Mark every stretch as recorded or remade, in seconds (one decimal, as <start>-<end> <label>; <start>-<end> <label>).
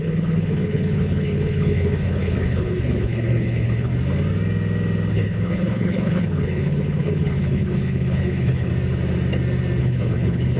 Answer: 0.0-3.9 remade; 3.9-5.1 recorded; 5.1-8.7 remade; 8.7-9.8 recorded; 9.8-10.6 remade